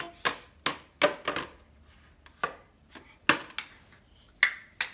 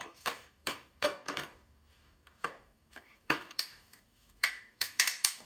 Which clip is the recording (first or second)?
first